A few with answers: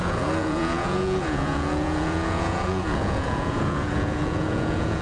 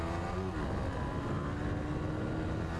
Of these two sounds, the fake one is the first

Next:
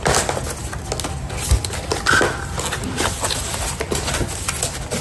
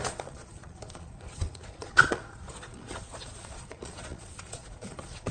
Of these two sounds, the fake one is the second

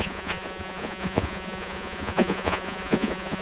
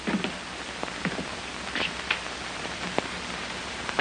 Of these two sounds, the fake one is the first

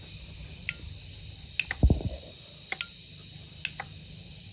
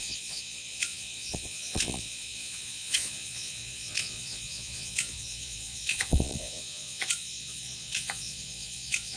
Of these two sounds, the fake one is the second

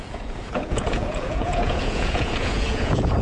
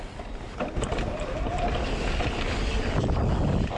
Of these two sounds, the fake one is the first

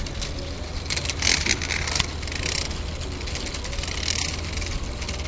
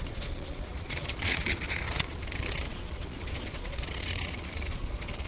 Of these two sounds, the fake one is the second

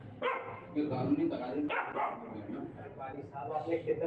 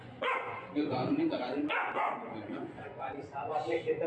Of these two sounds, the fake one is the second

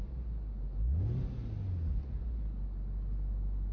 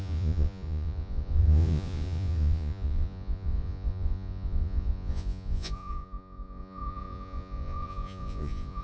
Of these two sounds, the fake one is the second